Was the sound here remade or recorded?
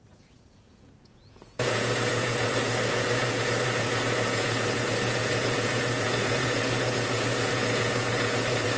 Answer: remade